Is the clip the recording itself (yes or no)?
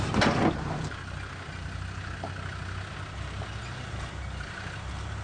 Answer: yes